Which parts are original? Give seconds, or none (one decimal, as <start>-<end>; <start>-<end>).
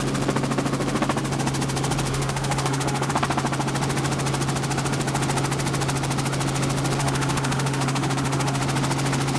0.0-2.1; 3.1-7.0; 8.6-9.4